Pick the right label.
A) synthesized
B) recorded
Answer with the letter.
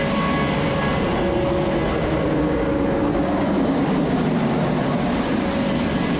B